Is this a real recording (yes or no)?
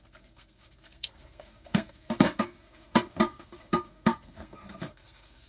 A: no